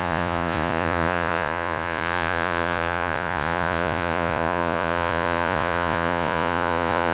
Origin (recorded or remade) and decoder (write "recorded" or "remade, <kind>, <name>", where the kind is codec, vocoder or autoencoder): remade, vocoder, Vocos